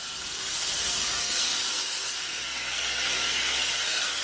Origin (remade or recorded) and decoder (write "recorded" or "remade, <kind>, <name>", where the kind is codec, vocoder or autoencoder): remade, codec, SNAC